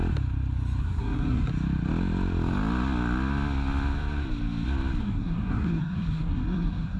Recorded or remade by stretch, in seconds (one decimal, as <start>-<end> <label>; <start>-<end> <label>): 0.0-0.8 recorded; 0.8-1.5 remade; 1.5-5.0 recorded; 5.0-7.0 remade